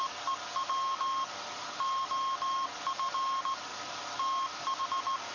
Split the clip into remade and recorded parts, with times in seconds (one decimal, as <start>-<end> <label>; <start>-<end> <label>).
0.0-5.3 recorded